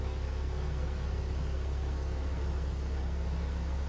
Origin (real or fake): fake